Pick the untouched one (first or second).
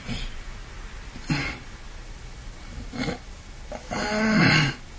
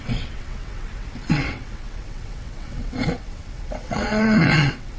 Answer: first